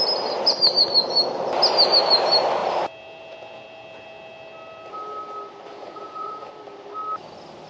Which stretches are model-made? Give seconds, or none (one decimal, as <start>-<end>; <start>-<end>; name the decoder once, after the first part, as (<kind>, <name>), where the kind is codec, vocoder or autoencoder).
5.7-6.5 (vocoder, Vocos)